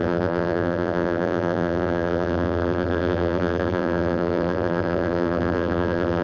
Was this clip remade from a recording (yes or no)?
yes